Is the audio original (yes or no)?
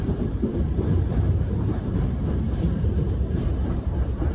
no